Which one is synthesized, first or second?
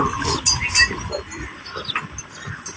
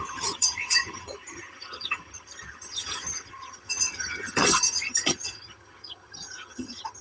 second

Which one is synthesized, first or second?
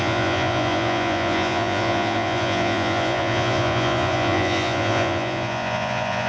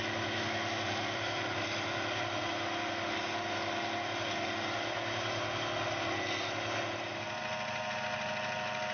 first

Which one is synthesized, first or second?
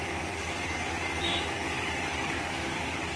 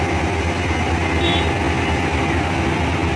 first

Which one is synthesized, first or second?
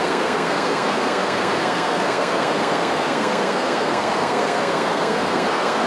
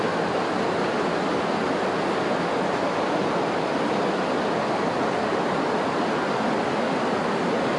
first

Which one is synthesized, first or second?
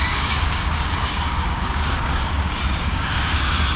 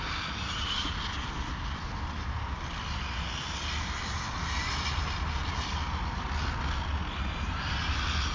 first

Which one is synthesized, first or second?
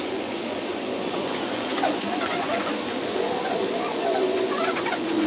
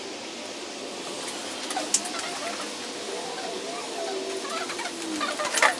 first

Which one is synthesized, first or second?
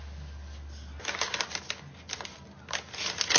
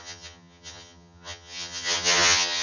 second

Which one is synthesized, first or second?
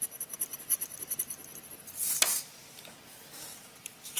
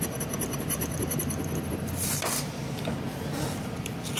second